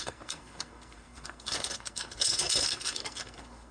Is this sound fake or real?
fake